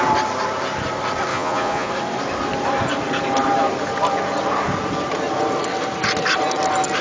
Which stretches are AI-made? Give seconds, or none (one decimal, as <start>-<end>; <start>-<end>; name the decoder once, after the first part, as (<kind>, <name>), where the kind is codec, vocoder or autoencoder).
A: 1.3-1.9 (vocoder, Vocos)